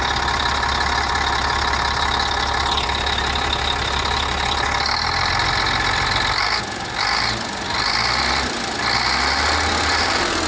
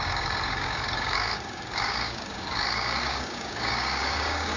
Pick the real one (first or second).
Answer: first